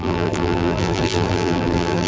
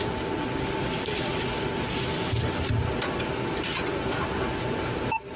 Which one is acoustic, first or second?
second